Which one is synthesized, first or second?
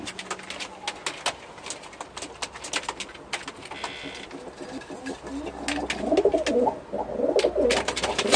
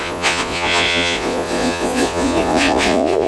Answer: second